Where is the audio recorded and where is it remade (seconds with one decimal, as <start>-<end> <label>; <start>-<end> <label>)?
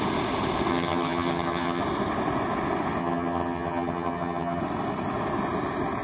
0.0-0.7 recorded; 0.7-1.8 remade; 1.8-3.0 recorded; 3.0-4.6 remade; 4.6-6.0 recorded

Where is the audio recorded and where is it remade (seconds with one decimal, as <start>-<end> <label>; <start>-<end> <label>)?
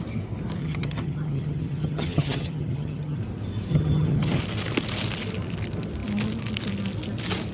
0.0-0.6 recorded; 0.6-3.2 remade; 3.2-3.7 recorded; 3.7-4.4 remade; 4.4-7.5 recorded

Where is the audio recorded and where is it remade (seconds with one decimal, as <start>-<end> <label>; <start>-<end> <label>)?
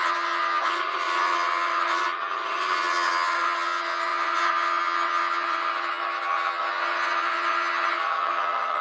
0.0-8.8 remade